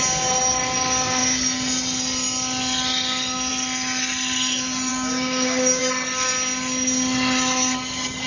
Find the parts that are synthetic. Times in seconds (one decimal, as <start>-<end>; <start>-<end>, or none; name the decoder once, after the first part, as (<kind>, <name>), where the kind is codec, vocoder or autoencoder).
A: 4.9-5.8 (codec, DAC)